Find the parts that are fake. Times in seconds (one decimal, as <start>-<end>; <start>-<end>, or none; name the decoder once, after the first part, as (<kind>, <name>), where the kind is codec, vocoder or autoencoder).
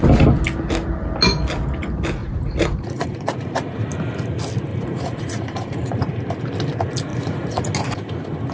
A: 2.2-3.9 (vocoder, Vocos); 4.7-6.1; 7.1-7.6